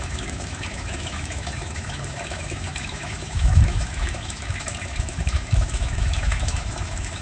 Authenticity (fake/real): fake